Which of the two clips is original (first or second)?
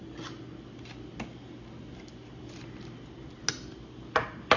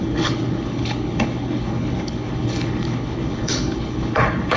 first